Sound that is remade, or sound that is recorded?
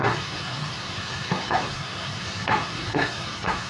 remade